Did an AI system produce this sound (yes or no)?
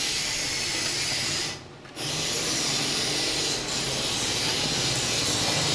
no